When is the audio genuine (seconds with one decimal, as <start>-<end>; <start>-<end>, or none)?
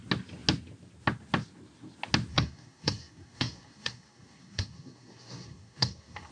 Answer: 0.0-2.3